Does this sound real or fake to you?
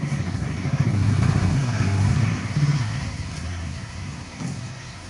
fake